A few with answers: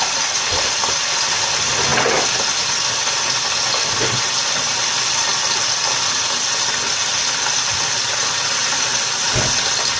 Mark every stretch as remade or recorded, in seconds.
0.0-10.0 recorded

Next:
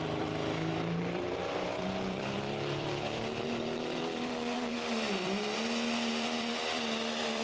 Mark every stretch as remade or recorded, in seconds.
0.0-7.4 remade

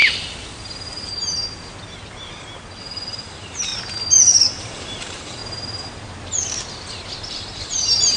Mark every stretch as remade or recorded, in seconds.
0.0-2.8 recorded; 2.8-3.7 remade; 3.7-4.5 recorded; 4.5-5.4 remade; 5.4-7.3 recorded; 7.3-8.2 remade

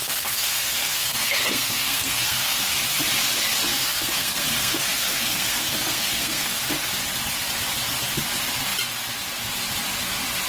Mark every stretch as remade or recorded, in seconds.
0.0-2.6 remade; 2.6-3.7 recorded; 3.7-6.6 remade; 6.6-10.5 recorded

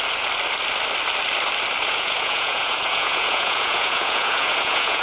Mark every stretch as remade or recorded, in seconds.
0.0-1.8 recorded; 1.8-5.0 remade